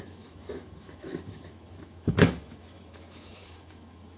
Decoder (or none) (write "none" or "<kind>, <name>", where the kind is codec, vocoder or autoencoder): autoencoder, DAC-VAE